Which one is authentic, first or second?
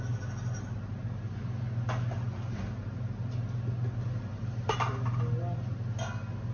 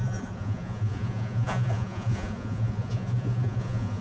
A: first